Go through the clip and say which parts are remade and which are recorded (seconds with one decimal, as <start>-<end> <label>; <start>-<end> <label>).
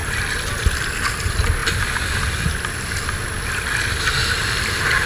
0.0-5.1 recorded